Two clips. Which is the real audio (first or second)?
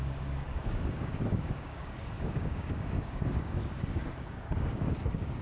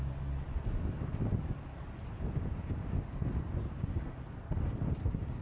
second